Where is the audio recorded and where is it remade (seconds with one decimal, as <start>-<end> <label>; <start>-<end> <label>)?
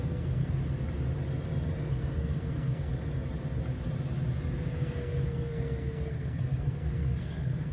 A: 0.0-0.6 remade; 0.6-1.9 recorded; 1.9-2.9 remade; 2.9-4.6 recorded; 4.6-7.7 remade